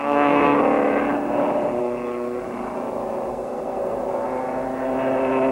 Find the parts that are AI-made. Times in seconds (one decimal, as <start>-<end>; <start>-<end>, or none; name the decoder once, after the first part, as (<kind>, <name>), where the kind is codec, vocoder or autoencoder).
0.0-0.6 (codec, SNAC); 1.8-2.4; 3.3-4.0